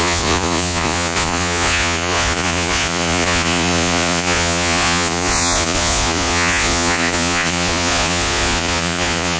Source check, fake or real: fake